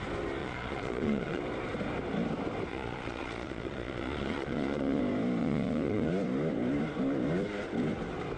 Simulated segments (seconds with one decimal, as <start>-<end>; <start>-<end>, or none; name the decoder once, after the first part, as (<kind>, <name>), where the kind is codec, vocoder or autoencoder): 0.4-1.4 (vocoder, Vocos); 2.7-5.0; 5.4-6.1